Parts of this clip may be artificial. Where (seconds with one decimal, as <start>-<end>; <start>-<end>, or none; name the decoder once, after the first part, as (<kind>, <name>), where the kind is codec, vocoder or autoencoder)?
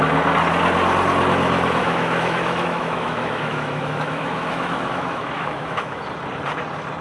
1.8-6.0 (autoencoder, DAC-VAE)